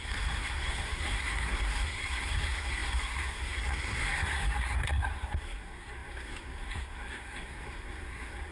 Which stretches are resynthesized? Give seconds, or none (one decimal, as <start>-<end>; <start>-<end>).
0.0-8.5